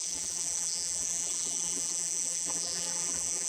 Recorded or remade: remade